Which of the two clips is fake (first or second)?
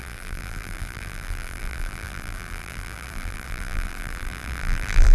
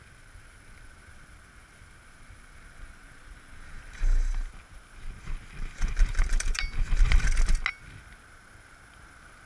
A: first